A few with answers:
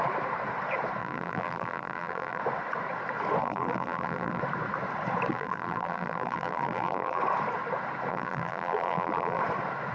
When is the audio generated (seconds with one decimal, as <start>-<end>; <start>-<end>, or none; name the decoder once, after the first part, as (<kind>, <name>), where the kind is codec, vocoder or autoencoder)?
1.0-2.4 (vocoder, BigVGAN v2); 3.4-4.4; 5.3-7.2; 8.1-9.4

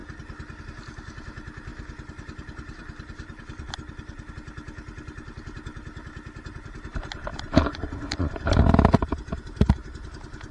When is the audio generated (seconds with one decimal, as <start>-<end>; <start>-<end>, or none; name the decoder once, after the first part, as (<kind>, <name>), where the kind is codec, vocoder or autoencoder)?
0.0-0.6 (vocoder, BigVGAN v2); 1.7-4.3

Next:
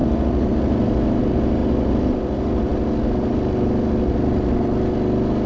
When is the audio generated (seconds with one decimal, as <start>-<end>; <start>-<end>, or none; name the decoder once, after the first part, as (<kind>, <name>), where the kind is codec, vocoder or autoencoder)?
none

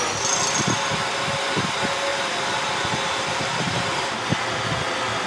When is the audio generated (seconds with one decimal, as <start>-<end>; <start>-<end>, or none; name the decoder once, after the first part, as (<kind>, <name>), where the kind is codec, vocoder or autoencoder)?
2.1-4.6 (vocoder, BigVGAN v2)

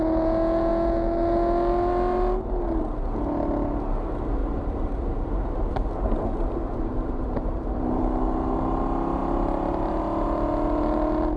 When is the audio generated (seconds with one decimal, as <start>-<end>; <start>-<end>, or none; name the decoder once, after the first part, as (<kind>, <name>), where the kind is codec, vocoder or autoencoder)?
4.4-8.0 (vocoder, BigVGAN v2)

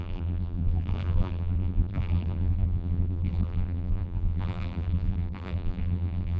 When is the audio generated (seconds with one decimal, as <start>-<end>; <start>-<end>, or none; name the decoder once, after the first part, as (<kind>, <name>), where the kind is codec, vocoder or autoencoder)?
0.0-6.4 (vocoder, BigVGAN v2)